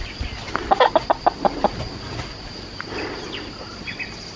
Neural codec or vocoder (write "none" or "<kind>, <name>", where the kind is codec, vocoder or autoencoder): none